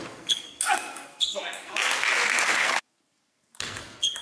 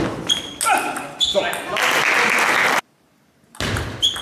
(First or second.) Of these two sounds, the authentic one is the second